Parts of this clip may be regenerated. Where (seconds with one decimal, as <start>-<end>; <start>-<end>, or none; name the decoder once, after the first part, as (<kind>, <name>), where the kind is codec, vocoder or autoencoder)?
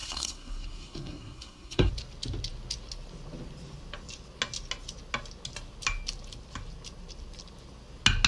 0.0-1.9 (codec, SNAC)